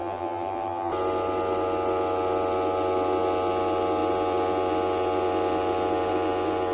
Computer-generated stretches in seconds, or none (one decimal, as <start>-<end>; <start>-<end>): 0.0-0.9